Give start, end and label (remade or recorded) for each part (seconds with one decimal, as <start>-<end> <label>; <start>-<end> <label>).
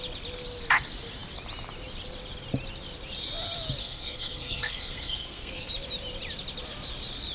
0.0-3.8 recorded; 3.8-5.7 remade; 5.7-7.3 recorded